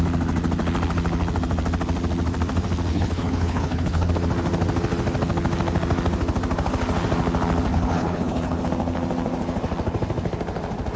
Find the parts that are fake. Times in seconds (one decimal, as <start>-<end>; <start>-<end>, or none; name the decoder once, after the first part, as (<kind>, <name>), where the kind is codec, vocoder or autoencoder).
2.9-4.1 (codec, HILCodec); 7.7-8.6